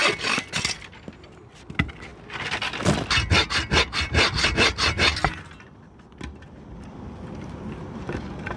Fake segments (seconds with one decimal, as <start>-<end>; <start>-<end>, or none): none